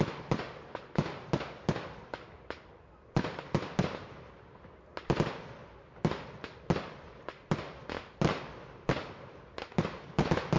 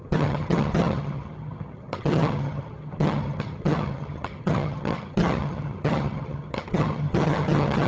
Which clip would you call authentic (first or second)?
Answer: first